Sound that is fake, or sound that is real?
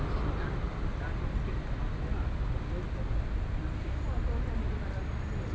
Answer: real